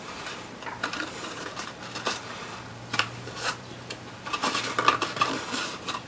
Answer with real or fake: fake